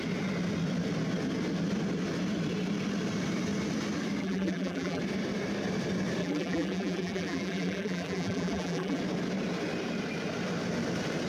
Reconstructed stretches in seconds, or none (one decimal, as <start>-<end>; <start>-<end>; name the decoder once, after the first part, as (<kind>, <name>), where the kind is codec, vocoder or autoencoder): 4.2-5.0 (vocoder, BigVGAN v2); 6.2-9.0